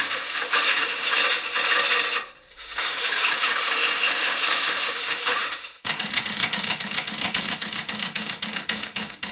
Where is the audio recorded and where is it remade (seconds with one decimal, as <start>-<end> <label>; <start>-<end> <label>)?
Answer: 0.0-1.2 remade; 1.2-2.5 recorded; 2.5-9.3 remade